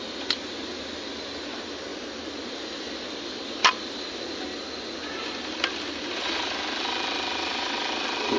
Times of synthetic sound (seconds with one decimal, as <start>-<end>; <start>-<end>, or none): none